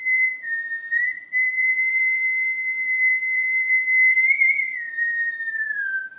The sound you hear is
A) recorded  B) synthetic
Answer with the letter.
B